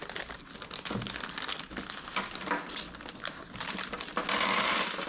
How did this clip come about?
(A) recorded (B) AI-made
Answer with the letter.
A